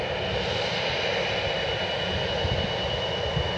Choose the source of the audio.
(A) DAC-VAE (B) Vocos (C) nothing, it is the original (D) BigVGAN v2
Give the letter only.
C